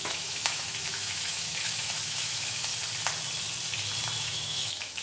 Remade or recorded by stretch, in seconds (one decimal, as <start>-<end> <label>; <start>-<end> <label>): 0.0-2.7 remade; 2.7-4.2 recorded; 4.2-5.0 remade